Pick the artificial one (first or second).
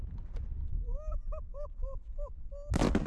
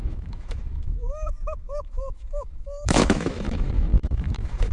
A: second